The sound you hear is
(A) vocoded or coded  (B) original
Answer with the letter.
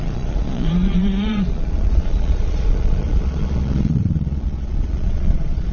A